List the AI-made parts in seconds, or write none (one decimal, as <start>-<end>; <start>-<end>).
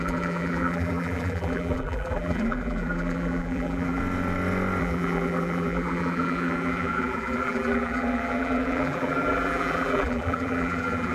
0.0-4.0; 4.8-11.1